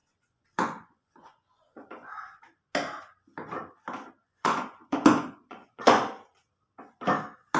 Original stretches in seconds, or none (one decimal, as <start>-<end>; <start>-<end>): 2.4-4.2; 6.0-7.6